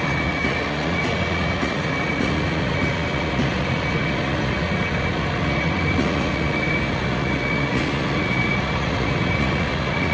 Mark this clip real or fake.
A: fake